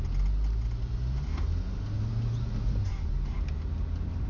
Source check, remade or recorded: recorded